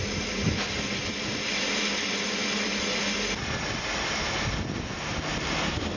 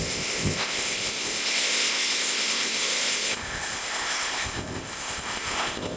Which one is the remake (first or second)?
second